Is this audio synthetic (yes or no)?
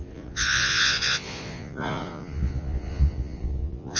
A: yes